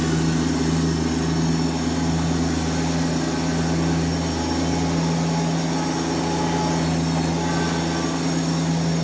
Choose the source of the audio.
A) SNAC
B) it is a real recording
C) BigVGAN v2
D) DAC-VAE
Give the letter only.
B